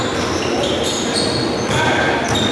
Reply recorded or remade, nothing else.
recorded